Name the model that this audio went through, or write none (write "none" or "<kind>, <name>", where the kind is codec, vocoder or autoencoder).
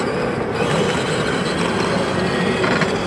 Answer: none